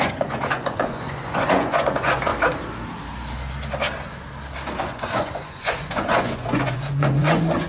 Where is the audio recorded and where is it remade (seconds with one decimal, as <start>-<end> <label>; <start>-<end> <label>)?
0.0-2.3 remade; 2.3-4.8 recorded; 4.8-7.7 remade